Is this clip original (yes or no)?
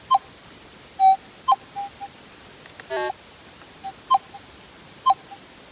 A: yes